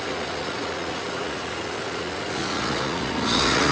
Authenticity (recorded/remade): remade